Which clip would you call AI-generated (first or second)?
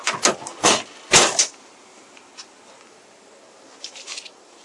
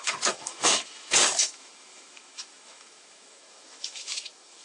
second